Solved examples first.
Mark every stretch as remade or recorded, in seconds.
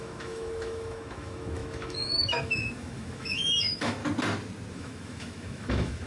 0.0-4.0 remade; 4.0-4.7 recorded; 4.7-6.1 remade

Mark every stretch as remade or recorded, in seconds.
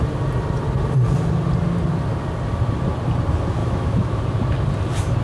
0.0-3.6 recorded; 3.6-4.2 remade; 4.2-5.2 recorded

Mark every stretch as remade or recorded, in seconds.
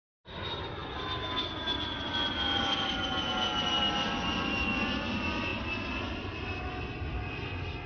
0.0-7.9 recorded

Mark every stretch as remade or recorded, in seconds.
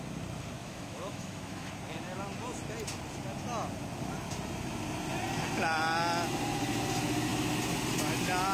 0.0-0.6 recorded; 0.6-1.7 remade; 1.7-8.5 recorded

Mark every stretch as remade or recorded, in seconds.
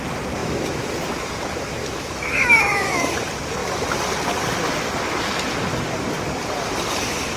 0.0-0.4 recorded; 0.4-0.9 remade; 0.9-1.8 recorded; 1.8-3.1 remade; 3.1-7.4 recorded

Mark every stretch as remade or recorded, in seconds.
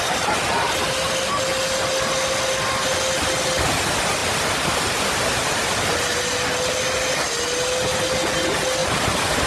0.0-9.5 recorded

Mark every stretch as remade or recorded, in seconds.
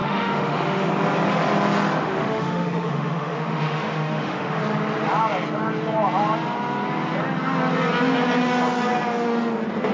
0.0-0.9 remade; 0.9-2.0 recorded; 2.0-4.6 remade; 4.6-9.9 recorded